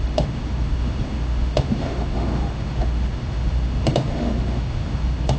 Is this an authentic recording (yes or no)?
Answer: no